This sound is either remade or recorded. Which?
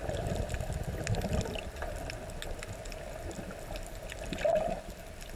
recorded